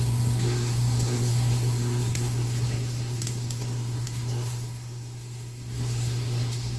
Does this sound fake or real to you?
fake